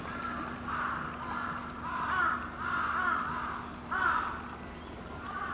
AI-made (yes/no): no